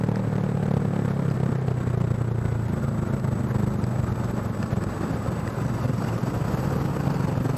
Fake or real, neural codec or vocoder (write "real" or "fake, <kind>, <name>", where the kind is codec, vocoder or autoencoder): real